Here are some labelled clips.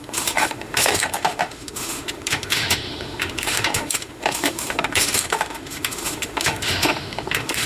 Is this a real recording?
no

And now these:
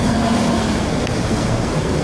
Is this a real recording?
no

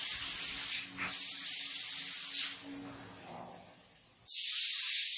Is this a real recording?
yes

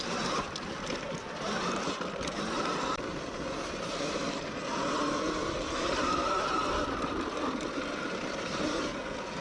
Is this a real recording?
no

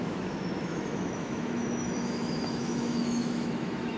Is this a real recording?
no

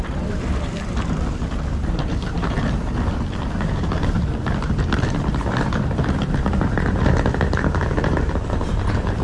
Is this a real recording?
no